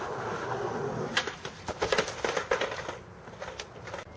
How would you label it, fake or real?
real